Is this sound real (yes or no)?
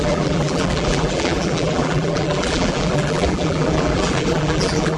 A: no